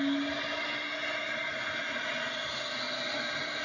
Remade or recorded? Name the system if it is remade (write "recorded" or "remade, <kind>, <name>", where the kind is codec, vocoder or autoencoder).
recorded